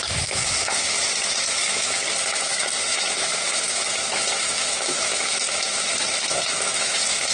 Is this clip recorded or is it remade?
remade